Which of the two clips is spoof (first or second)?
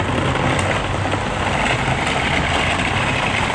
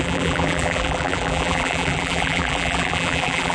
second